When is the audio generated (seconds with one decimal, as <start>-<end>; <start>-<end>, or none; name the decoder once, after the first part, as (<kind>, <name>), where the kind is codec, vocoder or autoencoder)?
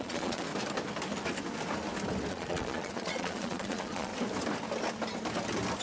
0.0-0.5 (vocoder, Vocos); 2.3-4.1